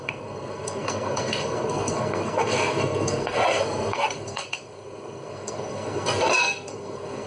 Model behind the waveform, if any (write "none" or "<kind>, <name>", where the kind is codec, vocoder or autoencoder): codec, SNAC